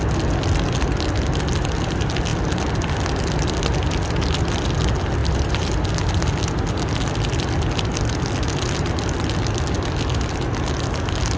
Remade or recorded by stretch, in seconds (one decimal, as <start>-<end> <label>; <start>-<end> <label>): 0.0-5.2 recorded; 5.2-5.7 remade; 5.7-11.4 recorded